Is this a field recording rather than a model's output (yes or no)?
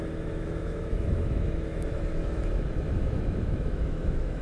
no